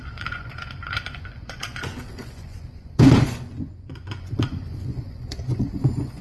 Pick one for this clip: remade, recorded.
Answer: remade